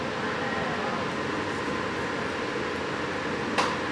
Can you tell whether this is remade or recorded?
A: recorded